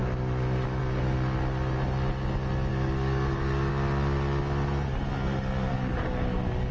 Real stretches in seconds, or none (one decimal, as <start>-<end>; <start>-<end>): 0.8-2.7; 3.7-5.7